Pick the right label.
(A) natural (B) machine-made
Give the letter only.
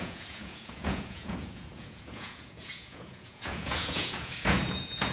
B